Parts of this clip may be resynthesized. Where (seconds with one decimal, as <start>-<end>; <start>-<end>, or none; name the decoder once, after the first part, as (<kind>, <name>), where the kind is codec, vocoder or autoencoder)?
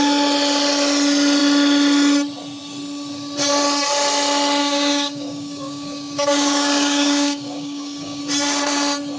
4.6-8.2 (codec, DAC)